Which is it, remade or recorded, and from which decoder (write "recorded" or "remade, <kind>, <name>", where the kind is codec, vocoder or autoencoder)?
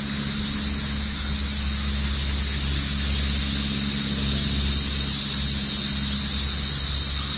recorded